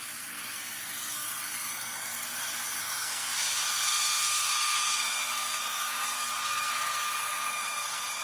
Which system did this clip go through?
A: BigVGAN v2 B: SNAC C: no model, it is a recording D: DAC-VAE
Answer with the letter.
B